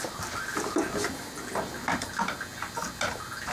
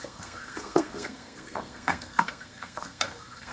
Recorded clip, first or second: first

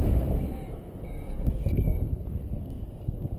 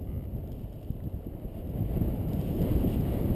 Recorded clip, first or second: second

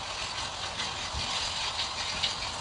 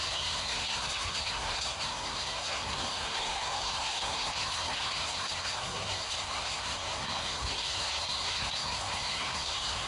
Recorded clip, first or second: first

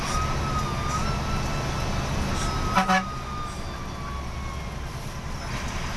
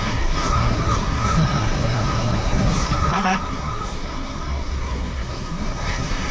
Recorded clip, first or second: first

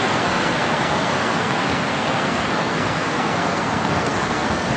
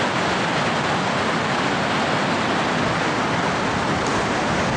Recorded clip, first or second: second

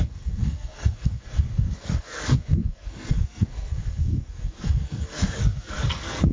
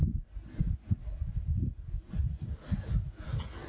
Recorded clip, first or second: second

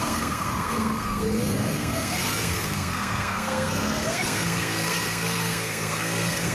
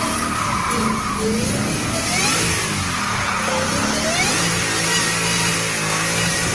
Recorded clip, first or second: second